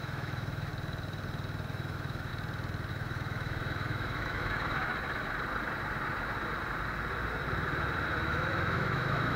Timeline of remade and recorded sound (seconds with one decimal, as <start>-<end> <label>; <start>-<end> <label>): 0.0-0.7 remade; 0.7-1.7 recorded; 1.7-2.3 remade; 2.3-2.9 recorded; 2.9-4.9 remade; 4.9-8.2 recorded; 8.2-9.4 remade